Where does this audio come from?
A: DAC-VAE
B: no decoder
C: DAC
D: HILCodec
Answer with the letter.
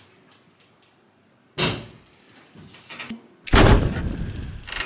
B